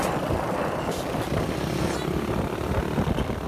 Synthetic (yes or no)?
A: no